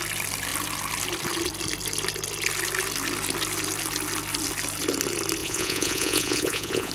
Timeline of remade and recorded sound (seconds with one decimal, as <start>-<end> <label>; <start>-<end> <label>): 0.0-5.4 recorded; 5.4-6.9 remade